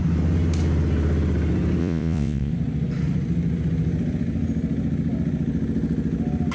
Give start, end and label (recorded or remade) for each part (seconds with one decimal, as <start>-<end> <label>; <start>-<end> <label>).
0.0-1.8 recorded; 1.8-2.5 remade; 2.5-6.5 recorded

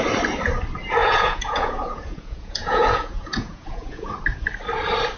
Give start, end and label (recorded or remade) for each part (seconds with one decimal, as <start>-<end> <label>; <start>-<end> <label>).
0.0-1.0 recorded; 1.0-4.1 remade; 4.1-5.2 recorded

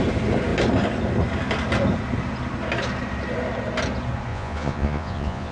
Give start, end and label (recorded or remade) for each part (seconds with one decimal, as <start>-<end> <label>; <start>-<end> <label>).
0.0-4.3 recorded; 4.3-5.5 remade

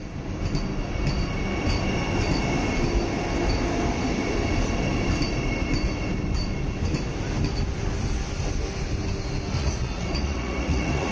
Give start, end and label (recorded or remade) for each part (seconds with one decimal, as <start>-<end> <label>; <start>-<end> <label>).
0.0-9.6 recorded; 9.6-11.1 remade

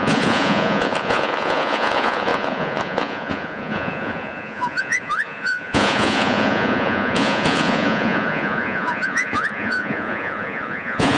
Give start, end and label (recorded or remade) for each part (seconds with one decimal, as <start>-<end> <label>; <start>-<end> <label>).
0.0-11.2 remade

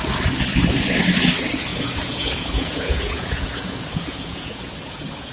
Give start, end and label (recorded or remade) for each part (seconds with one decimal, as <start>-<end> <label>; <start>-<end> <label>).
0.0-1.7 recorded; 1.7-5.3 remade

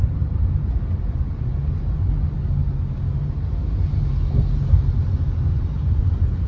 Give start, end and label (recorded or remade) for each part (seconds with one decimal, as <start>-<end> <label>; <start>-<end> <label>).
0.0-6.5 recorded

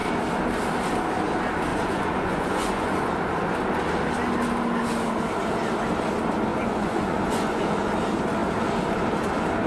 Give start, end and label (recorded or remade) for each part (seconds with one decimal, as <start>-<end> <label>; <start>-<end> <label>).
0.0-1.7 recorded; 1.7-3.1 remade; 3.1-6.5 recorded; 6.5-7.9 remade; 7.9-9.7 recorded